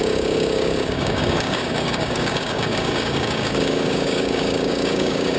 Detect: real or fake fake